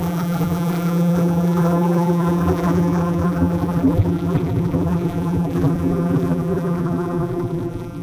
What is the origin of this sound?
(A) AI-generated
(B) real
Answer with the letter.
A